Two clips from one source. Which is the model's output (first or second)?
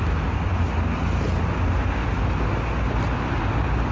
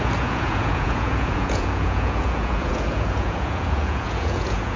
second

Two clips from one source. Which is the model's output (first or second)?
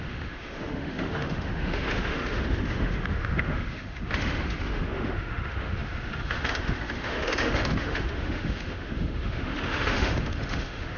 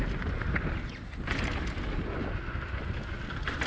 first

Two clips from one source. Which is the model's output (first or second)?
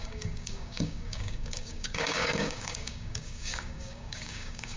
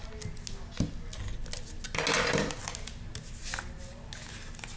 first